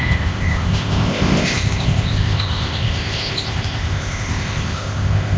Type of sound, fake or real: fake